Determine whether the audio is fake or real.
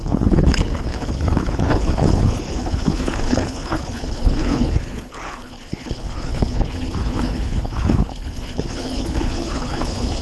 fake